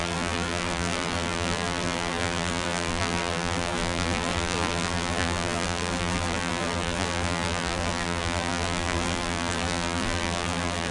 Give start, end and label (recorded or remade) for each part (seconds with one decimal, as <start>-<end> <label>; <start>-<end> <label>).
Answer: 0.0-10.9 remade